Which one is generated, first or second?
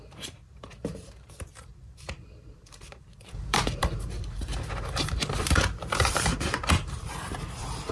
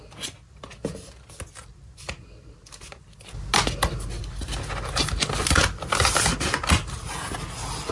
first